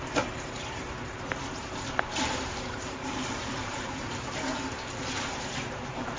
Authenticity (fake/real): fake